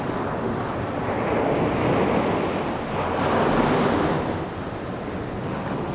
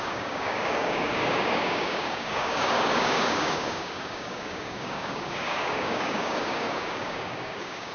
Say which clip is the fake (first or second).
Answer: second